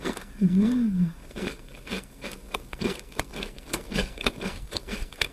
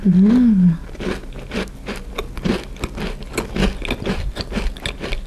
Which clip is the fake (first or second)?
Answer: first